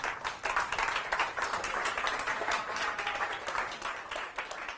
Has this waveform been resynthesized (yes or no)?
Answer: yes